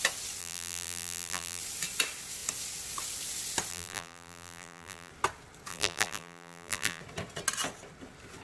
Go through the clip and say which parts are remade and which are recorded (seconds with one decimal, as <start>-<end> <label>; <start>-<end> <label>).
0.0-0.4 recorded; 0.4-1.6 remade; 1.6-3.7 recorded; 3.7-5.1 remade; 5.1-5.7 recorded; 5.7-7.0 remade; 7.0-8.4 recorded